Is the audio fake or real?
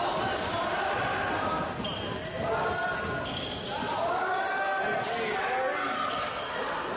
real